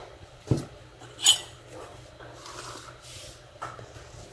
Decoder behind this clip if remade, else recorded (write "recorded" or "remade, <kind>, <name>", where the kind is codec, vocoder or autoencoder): recorded